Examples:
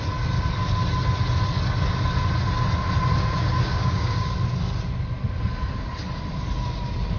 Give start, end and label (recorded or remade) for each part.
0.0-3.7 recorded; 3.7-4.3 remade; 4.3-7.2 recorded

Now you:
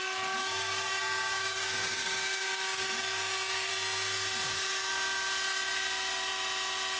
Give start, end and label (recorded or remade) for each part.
0.0-0.4 recorded; 0.4-3.7 remade; 3.7-7.0 recorded

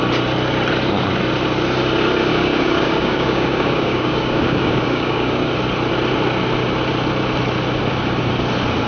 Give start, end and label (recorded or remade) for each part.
0.0-2.3 recorded; 2.3-5.5 remade; 5.5-8.9 recorded

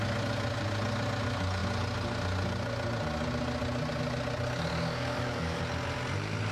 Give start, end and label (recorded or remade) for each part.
0.0-4.7 recorded; 4.7-5.6 remade; 5.6-6.5 recorded

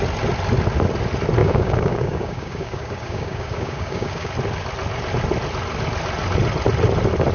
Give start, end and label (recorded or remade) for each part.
0.0-1.4 recorded; 1.4-4.3 remade; 4.3-7.3 recorded

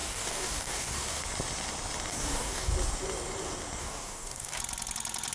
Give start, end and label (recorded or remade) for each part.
0.0-1.2 remade; 1.2-2.1 recorded; 2.1-2.7 remade; 2.7-3.8 recorded; 3.8-4.6 remade; 4.6-5.3 recorded

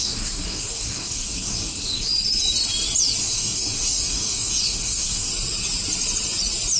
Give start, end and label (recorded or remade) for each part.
0.0-2.1 remade; 2.1-3.2 recorded; 3.2-5.3 remade; 5.3-6.8 recorded

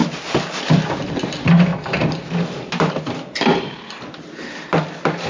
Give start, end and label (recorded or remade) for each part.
0.0-5.3 recorded